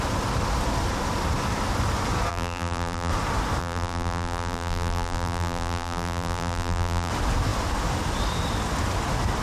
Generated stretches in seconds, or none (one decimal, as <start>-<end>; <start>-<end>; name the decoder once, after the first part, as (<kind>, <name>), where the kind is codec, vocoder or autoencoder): 2.3-3.1 (vocoder, BigVGAN v2); 3.6-7.1